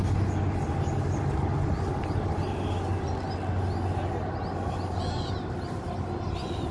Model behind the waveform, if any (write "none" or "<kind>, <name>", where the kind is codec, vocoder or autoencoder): none